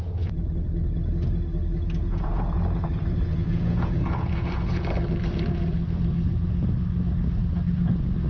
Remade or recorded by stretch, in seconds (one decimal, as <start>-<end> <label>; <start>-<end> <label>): 0.0-2.0 recorded; 2.0-4.9 remade; 4.9-8.3 recorded